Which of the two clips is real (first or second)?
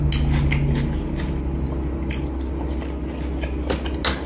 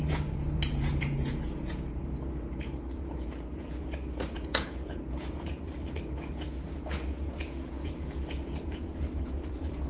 first